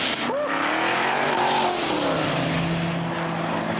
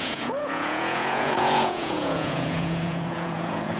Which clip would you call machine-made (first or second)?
second